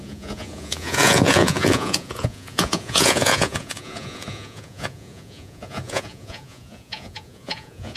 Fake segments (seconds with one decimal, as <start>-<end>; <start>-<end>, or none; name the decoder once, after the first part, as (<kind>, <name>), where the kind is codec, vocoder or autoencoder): 0.0-8.0 (vocoder, Vocos)